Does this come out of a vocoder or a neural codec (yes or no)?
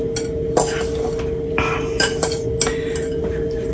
no